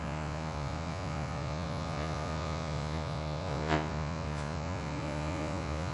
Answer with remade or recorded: remade